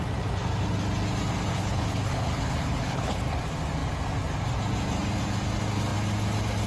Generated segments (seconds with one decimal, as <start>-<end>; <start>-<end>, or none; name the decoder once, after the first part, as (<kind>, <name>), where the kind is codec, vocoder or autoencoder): 1.5-3.2 (codec, HILCodec)